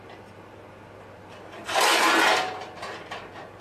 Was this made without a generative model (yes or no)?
yes